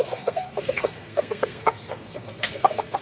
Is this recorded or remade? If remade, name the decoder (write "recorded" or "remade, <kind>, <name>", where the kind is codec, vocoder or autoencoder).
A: remade, codec, SNAC